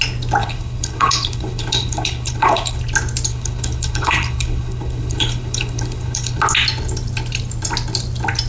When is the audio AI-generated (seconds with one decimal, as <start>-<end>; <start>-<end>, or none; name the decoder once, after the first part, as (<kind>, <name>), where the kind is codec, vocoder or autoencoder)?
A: 0.4-2.8 (codec, HILCodec); 3.3-6.4